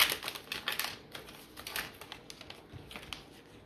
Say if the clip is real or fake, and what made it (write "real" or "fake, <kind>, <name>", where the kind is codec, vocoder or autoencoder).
real